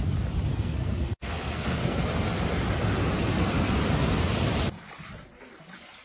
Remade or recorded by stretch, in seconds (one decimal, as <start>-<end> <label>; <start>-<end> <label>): 0.0-0.5 recorded; 0.5-2.0 remade; 2.0-6.0 recorded